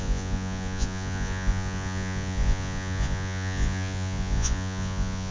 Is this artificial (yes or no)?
yes